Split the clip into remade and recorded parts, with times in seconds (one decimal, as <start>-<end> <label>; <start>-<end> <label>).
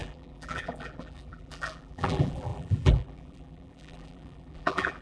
0.0-5.0 remade